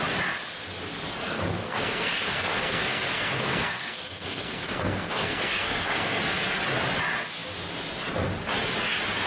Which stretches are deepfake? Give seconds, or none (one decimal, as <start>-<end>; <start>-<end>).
1.2-6.2